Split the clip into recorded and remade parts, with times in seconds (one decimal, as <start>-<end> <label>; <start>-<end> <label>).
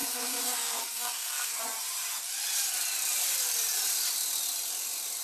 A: 0.0-1.6 remade; 1.6-5.2 recorded